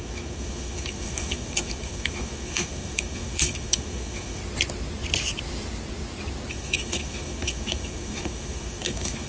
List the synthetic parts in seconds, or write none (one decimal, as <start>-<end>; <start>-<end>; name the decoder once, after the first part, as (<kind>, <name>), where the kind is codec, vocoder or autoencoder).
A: 0.0-4.4 (autoencoder, DAC-VAE); 6.5-9.3